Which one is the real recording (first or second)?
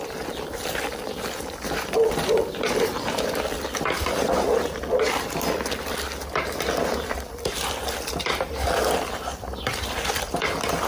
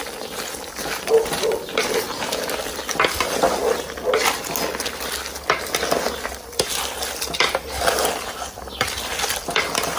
second